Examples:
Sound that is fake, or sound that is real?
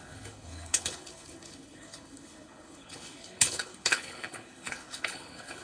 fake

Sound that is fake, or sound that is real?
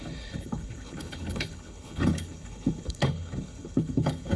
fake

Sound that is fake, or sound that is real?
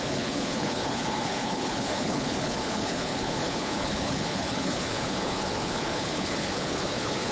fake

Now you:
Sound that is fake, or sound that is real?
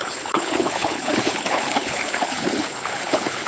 fake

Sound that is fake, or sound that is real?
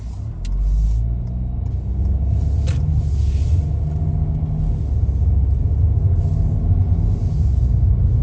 real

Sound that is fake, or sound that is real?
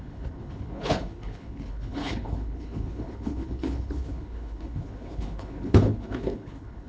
fake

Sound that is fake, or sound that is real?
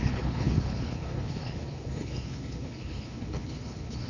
fake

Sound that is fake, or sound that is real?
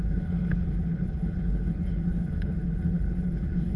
fake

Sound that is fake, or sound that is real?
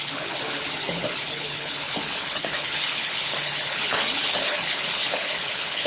fake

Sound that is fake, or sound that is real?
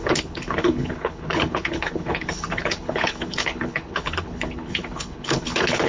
fake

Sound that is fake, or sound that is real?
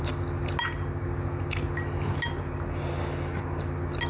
real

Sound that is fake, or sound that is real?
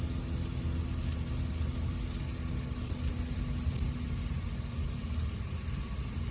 real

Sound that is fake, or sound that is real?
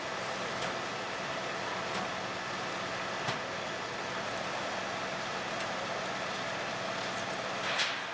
real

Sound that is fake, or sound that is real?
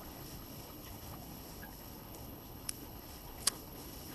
fake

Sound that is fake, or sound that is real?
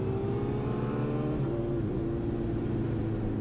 real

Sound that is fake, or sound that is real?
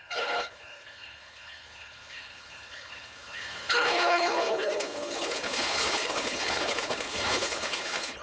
fake